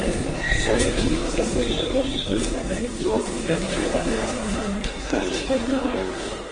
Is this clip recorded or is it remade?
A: remade